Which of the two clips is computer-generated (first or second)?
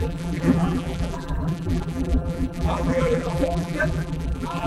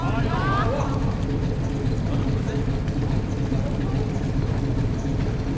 first